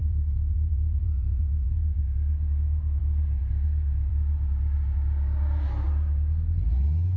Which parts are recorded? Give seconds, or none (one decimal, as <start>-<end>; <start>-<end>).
2.0-7.2